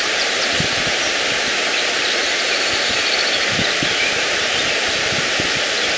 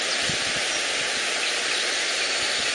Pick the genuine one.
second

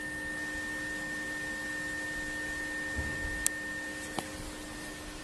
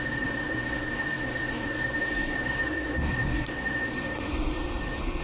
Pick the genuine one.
first